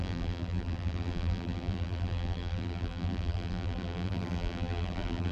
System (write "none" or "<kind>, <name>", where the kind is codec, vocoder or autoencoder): vocoder, BigVGAN v2